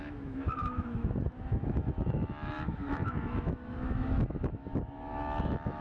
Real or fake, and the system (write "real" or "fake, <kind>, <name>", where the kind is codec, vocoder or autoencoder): fake, autoencoder, DAC-VAE